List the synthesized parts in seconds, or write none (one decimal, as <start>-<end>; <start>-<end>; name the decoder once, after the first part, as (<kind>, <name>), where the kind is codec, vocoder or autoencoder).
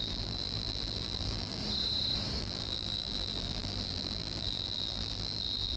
0.0-1.6 (vocoder, BigVGAN v2); 2.4-5.8